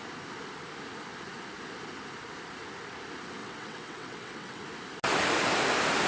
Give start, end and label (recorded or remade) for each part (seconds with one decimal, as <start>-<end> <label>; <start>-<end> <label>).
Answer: 0.0-3.4 recorded; 3.4-4.6 remade; 4.6-6.1 recorded